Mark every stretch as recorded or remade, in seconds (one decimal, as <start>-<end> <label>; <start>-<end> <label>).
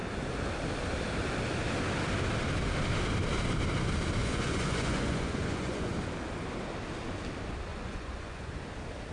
0.0-4.2 recorded; 4.2-5.9 remade; 5.9-7.7 recorded; 7.7-8.5 remade; 8.5-9.1 recorded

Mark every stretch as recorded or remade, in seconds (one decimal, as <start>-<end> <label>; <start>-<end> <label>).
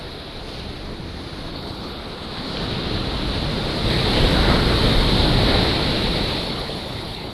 0.0-1.5 recorded; 1.5-2.0 remade; 2.0-6.4 recorded; 6.4-7.3 remade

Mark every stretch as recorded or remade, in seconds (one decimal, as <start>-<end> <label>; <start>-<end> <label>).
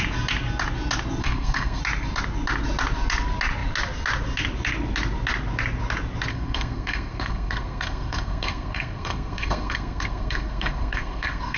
0.0-1.2 recorded; 1.2-1.8 remade; 1.8-6.3 recorded; 6.3-11.6 remade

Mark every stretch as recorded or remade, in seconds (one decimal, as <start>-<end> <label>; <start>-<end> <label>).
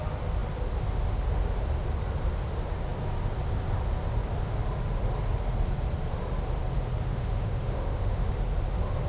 0.0-7.1 recorded; 7.1-8.3 remade; 8.3-9.1 recorded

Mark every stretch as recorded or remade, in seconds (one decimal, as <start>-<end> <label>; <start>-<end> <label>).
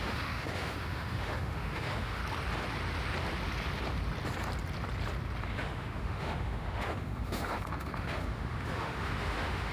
0.0-2.2 remade; 2.2-5.4 recorded; 5.4-9.7 remade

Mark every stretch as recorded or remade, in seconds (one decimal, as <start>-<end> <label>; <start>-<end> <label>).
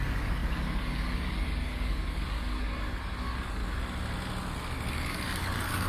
0.0-3.6 remade; 3.6-4.9 recorded; 4.9-5.9 remade